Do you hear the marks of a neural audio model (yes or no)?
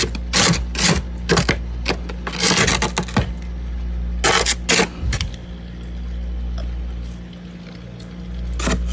no